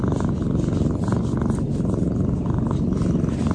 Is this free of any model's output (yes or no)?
yes